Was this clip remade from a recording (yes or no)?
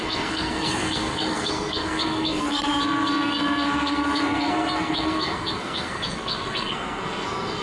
yes